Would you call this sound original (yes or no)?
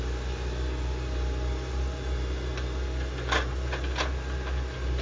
yes